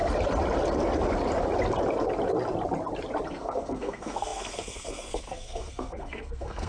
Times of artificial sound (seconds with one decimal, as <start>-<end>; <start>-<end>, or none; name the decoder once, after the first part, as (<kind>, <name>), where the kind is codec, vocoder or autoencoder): 3.3-6.7 (codec, SNAC)